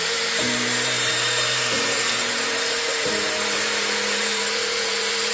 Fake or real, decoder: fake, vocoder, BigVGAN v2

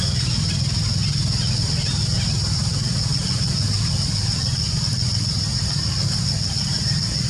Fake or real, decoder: real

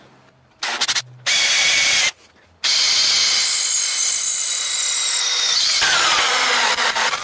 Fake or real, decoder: real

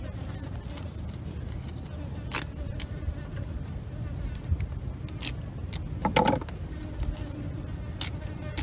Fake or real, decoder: real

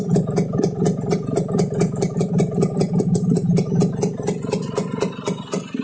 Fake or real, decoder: real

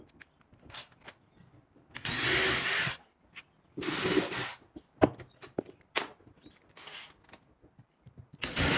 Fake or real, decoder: real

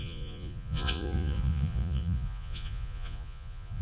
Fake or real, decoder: fake, vocoder, Vocos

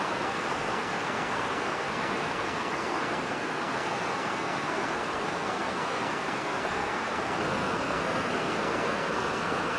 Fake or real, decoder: fake, codec, SNAC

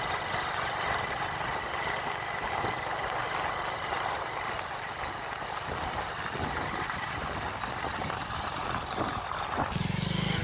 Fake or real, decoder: real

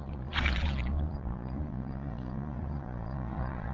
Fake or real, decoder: fake, vocoder, Vocos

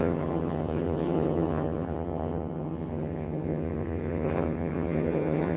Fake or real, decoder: fake, vocoder, HiFi-GAN